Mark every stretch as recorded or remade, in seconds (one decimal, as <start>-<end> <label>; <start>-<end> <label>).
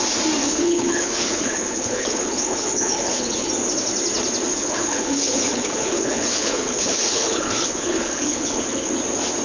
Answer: 0.0-0.4 recorded; 0.4-3.5 remade; 3.5-4.5 recorded; 4.5-8.9 remade; 8.9-9.4 recorded